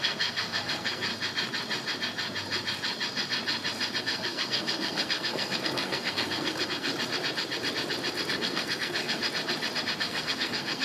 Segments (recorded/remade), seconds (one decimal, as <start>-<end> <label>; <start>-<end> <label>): 0.0-1.1 remade; 1.1-4.0 recorded; 4.0-6.9 remade; 6.9-8.3 recorded; 8.3-9.2 remade; 9.2-10.0 recorded; 10.0-10.8 remade